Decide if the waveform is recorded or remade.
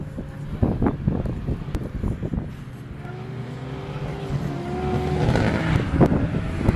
recorded